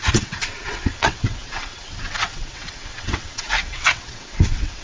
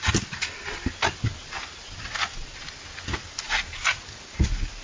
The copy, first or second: first